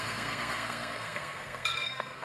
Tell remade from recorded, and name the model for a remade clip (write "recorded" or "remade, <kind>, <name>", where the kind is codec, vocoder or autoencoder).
remade, codec, SNAC